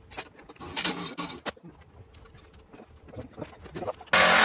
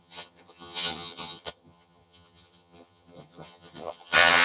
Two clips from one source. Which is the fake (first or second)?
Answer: second